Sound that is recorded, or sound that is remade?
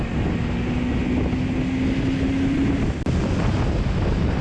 recorded